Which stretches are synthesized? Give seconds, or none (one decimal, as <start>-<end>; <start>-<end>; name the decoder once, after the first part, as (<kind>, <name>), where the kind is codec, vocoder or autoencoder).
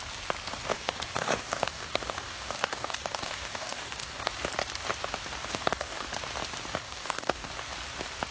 0.7-4.3 (codec, DAC); 5.5-6.0; 6.8-7.5